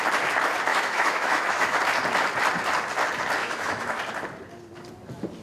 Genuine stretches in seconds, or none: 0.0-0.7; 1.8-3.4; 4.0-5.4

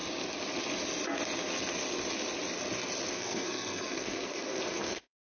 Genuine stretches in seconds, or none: 0.0-3.1

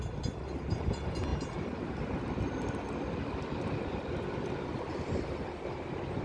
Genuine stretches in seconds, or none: 0.0-6.2